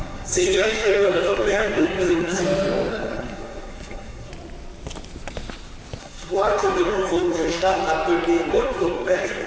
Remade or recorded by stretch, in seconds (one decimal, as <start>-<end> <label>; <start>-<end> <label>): 0.0-2.4 remade; 2.4-2.9 recorded; 2.9-4.3 remade; 4.3-6.0 recorded; 6.0-7.8 remade; 7.8-8.5 recorded; 8.5-9.5 remade